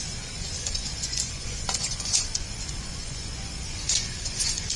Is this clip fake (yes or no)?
yes